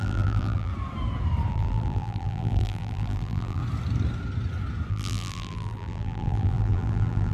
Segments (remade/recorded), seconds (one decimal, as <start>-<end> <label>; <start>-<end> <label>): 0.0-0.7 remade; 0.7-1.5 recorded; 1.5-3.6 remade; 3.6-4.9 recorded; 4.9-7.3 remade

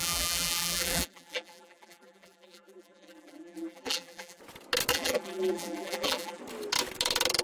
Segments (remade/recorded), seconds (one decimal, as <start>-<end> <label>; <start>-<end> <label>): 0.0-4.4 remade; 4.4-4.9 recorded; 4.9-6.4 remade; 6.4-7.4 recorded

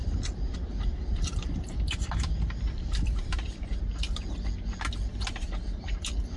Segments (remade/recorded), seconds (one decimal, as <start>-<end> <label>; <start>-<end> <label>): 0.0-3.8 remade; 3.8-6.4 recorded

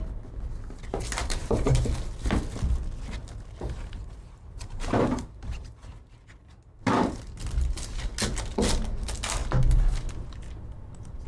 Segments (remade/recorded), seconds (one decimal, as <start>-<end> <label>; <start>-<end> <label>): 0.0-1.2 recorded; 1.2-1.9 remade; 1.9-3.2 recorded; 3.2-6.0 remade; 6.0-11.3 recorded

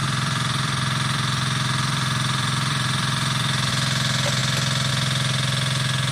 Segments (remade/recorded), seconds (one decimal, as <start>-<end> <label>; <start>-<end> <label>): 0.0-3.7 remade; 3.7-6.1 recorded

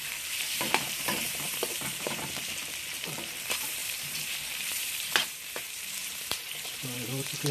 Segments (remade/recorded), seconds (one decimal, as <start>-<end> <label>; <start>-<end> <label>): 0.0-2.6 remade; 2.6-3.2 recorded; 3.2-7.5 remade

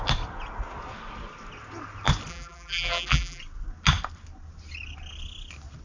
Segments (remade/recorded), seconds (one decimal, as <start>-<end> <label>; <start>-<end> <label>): 0.0-2.3 recorded; 2.3-3.4 remade; 3.4-5.8 recorded

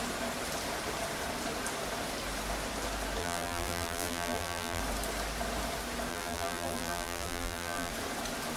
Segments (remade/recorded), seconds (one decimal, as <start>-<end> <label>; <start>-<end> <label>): 0.0-3.2 recorded; 3.2-4.8 remade; 4.8-6.1 recorded; 6.1-7.9 remade; 7.9-8.6 recorded